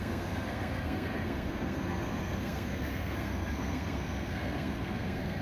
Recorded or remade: remade